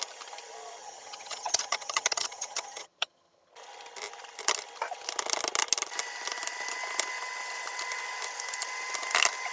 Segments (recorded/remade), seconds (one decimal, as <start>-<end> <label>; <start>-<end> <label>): 0.0-0.8 recorded; 0.8-3.5 remade; 3.5-9.5 recorded